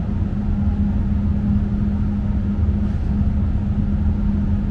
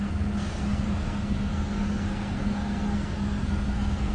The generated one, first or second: second